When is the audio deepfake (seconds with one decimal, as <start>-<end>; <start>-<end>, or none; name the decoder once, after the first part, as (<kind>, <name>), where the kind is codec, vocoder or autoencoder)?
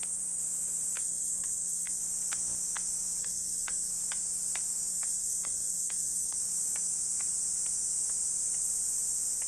1.0-2.0 (codec, SNAC); 3.2-3.9; 4.9-6.4